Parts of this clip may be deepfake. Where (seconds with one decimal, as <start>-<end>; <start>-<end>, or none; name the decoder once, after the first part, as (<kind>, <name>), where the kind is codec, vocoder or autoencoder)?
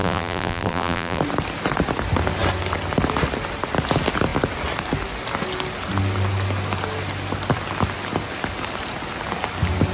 0.0-1.2 (vocoder, BigVGAN v2)